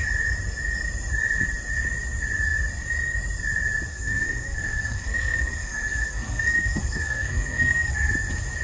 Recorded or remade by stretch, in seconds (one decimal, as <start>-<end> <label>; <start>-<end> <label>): 0.0-3.9 recorded; 3.9-7.9 remade; 7.9-8.6 recorded